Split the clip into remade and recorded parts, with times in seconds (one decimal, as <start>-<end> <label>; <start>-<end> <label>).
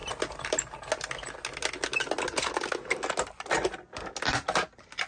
0.0-5.1 recorded